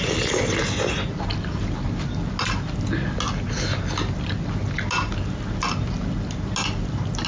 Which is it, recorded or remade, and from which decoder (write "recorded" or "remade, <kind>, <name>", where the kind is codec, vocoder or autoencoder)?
recorded